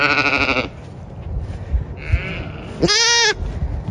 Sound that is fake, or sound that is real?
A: real